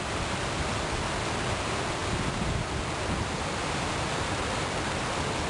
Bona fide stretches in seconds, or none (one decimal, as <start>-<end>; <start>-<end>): 0.0-5.5